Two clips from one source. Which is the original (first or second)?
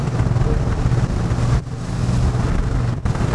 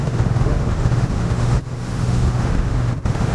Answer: first